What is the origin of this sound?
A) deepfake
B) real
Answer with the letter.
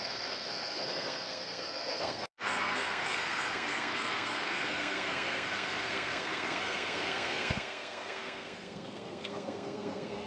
A